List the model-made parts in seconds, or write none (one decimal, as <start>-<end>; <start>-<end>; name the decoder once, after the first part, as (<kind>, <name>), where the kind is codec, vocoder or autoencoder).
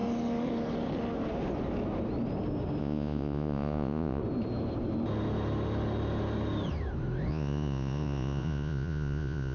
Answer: 2.8-4.2 (vocoder, Vocos); 7.3-9.5